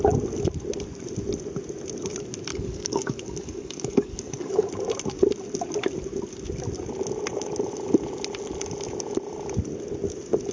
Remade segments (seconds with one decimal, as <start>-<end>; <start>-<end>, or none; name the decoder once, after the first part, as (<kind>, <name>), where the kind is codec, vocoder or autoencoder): 2.5-4.7 (codec, DAC)